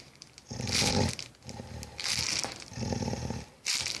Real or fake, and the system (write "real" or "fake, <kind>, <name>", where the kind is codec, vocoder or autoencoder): real